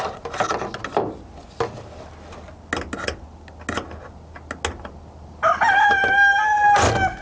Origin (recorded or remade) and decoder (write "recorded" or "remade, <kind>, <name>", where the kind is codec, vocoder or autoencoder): recorded